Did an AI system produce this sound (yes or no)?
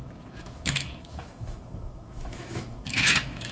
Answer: yes